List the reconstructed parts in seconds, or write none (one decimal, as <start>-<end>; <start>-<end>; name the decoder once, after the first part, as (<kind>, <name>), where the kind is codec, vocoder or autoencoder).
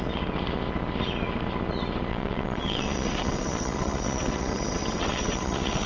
2.1-5.9 (vocoder, WaveNeXt)